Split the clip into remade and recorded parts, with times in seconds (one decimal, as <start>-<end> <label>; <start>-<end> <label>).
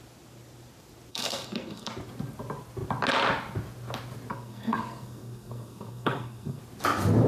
0.0-1.1 recorded; 1.1-1.9 remade; 1.9-4.3 recorded; 4.3-6.6 remade; 6.6-7.3 recorded